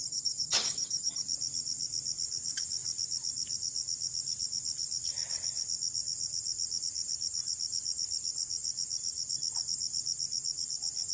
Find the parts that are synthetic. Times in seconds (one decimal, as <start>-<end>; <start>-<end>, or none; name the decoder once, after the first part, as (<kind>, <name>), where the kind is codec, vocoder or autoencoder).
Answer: 0.0-1.2 (vocoder, HiFi-GAN)